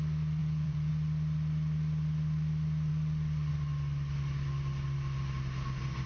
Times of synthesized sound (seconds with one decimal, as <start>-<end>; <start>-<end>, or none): 0.4-0.9